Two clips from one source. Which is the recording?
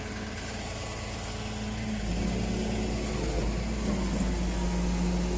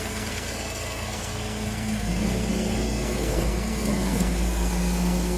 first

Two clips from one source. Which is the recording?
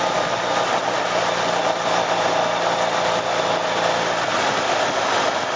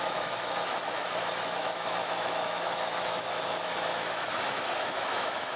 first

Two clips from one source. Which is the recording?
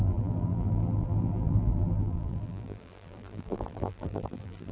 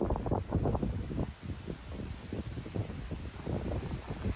second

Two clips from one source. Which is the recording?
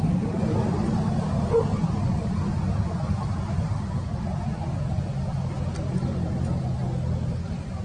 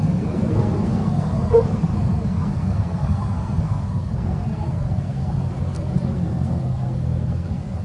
first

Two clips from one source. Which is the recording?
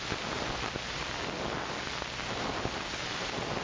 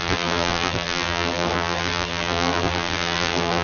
first